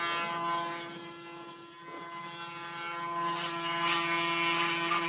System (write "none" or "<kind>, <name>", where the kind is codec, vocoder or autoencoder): none